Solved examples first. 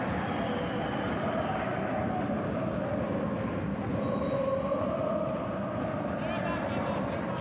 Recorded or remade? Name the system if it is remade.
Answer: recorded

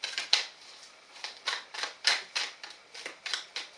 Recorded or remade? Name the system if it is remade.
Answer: recorded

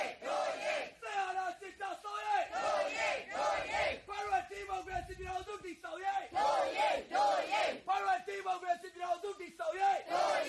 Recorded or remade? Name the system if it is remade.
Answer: recorded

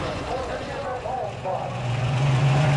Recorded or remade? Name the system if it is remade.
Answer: remade, vocoder, Vocos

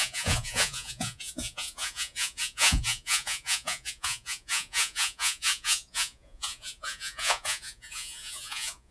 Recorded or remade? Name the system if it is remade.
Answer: remade, vocoder, Vocos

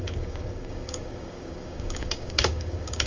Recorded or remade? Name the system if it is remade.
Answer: remade, codec, DAC